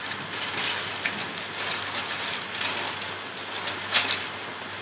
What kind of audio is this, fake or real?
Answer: real